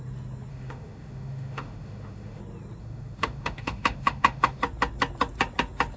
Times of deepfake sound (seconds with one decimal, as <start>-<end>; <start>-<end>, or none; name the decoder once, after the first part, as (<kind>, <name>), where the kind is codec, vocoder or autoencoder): 0.5-2.4 (autoencoder, DAC-VAE); 2.8-4.6